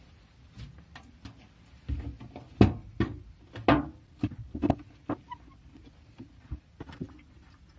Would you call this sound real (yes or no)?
yes